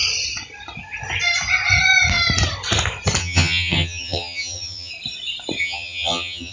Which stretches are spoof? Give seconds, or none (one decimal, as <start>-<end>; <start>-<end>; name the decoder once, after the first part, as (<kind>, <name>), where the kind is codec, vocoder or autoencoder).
3.2-4.9 (vocoder, HiFi-GAN); 5.6-6.5